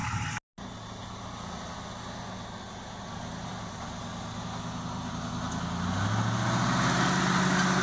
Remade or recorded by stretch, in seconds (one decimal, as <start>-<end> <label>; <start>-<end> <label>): 0.0-7.8 recorded